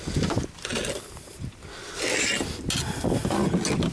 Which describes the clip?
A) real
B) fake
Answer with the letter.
A